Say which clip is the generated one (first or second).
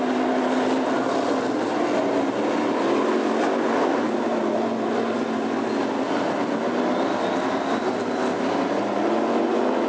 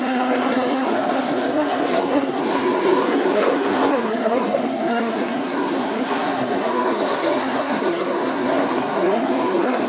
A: second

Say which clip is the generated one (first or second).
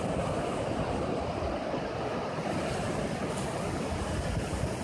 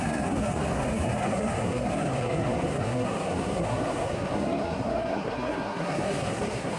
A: second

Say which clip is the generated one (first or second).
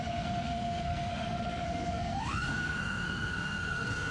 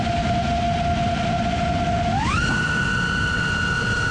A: first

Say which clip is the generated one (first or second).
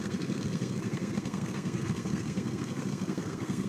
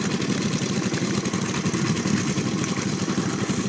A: first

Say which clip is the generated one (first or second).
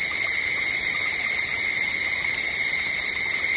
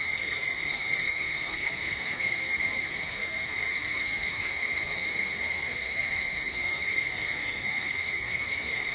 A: second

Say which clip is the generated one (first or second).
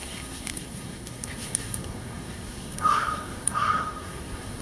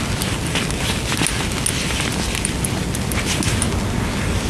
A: first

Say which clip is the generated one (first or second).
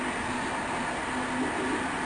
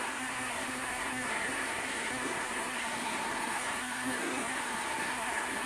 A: second